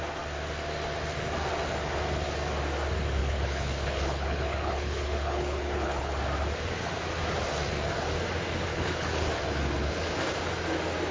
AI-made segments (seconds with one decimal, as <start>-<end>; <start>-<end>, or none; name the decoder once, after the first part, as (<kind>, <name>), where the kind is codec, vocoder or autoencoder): 3.2-6.1 (codec, HILCodec); 8.7-9.3